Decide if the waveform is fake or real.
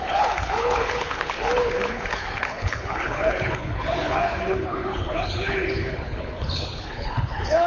fake